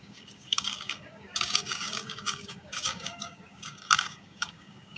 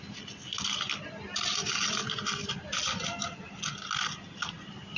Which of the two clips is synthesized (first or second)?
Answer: first